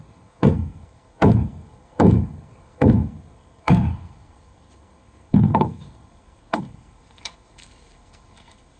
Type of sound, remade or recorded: remade